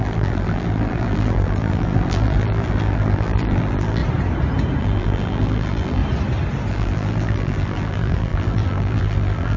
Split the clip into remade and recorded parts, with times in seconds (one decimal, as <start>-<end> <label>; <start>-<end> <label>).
0.0-4.0 remade; 4.0-4.8 recorded; 4.8-6.0 remade; 6.0-6.7 recorded; 6.7-9.6 remade